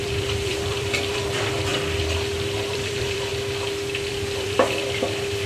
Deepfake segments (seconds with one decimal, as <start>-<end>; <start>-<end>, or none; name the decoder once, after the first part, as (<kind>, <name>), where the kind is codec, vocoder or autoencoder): 0.0-1.7 (vocoder, BigVGAN v2); 2.7-3.3; 4.1-5.5

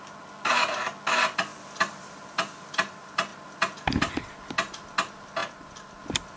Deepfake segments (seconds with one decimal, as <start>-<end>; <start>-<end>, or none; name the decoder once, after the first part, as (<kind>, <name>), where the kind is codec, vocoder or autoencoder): 1.5-2.2 (vocoder, BigVGAN v2); 3.3-4.1; 5.4-6.0